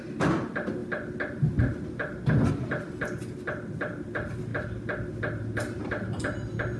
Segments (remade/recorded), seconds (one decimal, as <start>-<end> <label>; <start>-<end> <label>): 0.0-6.8 recorded